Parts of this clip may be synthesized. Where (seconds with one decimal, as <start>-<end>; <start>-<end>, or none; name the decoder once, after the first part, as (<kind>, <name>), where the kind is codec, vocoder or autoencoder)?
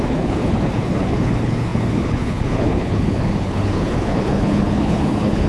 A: 0.0-5.5 (codec, HILCodec)